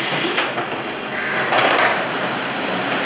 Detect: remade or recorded recorded